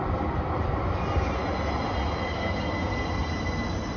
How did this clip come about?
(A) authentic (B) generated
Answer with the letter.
A